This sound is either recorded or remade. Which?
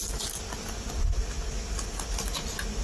recorded